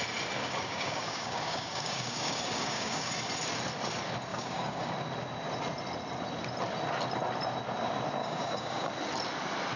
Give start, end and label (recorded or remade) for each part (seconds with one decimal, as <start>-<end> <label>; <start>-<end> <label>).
0.0-0.4 recorded; 0.4-3.1 remade; 3.1-4.3 recorded; 4.3-4.9 remade; 4.9-8.2 recorded; 8.2-8.9 remade; 8.9-9.8 recorded